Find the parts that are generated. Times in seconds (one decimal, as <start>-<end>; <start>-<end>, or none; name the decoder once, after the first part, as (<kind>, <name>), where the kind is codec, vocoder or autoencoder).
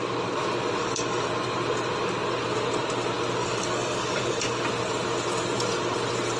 0.8-1.3 (codec, DAC); 3.4-4.6